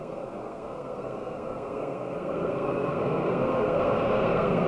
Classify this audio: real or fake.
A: fake